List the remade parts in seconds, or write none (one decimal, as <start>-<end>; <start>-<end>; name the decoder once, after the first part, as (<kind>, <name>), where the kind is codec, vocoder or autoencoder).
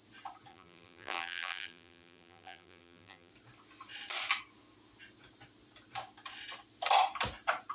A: 0.5-3.3 (vocoder, BigVGAN v2)